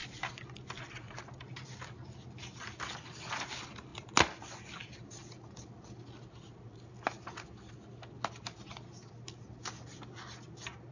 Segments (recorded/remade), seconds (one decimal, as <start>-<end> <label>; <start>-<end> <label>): 0.0-10.9 recorded

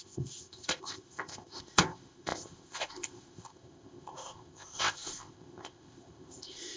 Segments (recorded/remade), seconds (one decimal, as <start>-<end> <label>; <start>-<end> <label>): 0.0-6.8 remade

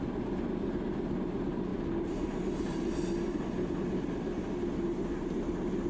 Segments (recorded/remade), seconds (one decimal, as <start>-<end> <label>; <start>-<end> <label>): 0.0-1.7 recorded; 1.7-2.4 remade; 2.4-5.9 recorded

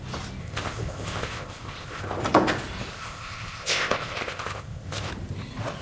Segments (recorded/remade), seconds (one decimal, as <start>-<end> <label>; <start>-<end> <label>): 0.0-0.4 recorded; 0.4-2.2 remade; 2.2-2.9 recorded; 2.9-5.1 remade; 5.1-5.8 recorded

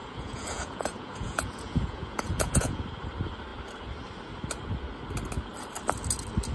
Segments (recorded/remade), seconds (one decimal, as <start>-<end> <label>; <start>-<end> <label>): 0.0-2.8 remade; 2.8-6.5 recorded

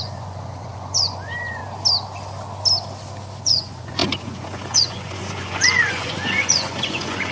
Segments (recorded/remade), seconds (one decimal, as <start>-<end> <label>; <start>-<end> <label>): 0.0-1.6 remade; 1.6-3.4 recorded; 3.4-7.3 remade